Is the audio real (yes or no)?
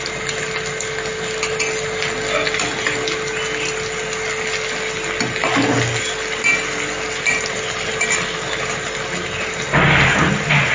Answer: yes